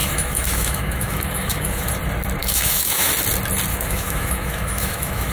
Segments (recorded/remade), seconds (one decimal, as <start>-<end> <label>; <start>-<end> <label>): 0.0-1.9 remade; 1.9-2.4 recorded; 2.4-3.1 remade; 3.1-3.7 recorded; 3.7-5.3 remade